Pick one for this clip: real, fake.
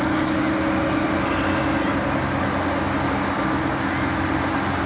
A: real